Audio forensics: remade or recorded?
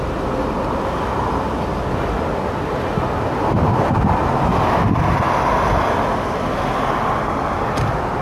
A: recorded